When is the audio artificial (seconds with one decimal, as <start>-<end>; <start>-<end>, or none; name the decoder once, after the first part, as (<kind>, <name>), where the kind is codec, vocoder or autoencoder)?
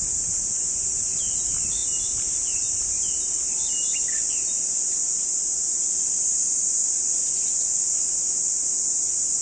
none